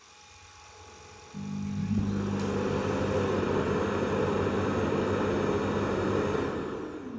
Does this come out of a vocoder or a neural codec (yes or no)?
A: no